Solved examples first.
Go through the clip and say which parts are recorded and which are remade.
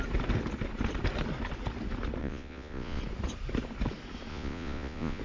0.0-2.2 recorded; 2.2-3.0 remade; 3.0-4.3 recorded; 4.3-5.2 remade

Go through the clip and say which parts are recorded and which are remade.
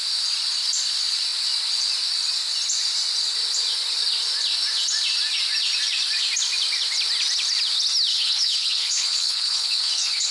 0.0-8.1 recorded; 8.1-10.3 remade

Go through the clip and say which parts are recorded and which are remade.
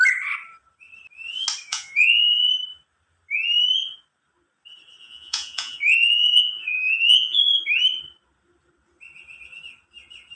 0.0-1.7 recorded; 1.7-2.5 remade; 2.5-5.0 recorded; 5.0-7.6 remade; 7.6-10.4 recorded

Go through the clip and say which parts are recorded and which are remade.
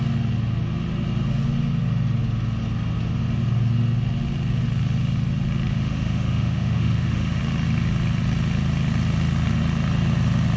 0.0-5.7 recorded; 5.7-7.4 remade; 7.4-10.6 recorded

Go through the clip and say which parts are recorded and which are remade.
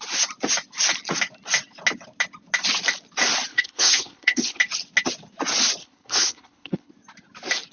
0.0-3.5 recorded; 3.5-4.6 remade; 4.6-5.8 recorded; 5.8-6.9 remade; 6.9-7.7 recorded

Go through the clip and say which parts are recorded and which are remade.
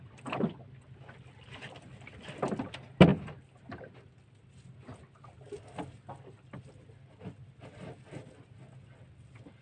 0.0-9.6 recorded